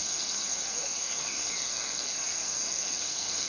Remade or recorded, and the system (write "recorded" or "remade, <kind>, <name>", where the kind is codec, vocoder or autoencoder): remade, codec, SNAC